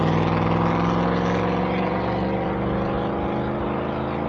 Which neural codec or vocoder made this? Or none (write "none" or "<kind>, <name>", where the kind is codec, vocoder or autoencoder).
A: none